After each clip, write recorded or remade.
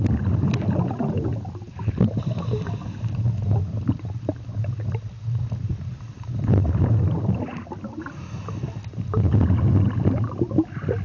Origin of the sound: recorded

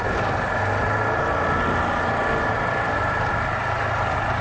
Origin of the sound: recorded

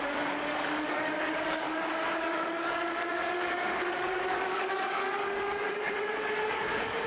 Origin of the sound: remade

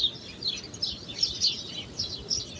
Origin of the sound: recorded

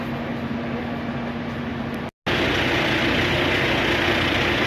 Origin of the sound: recorded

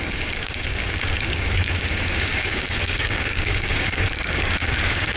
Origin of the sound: remade